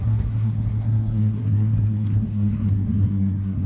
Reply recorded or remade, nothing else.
remade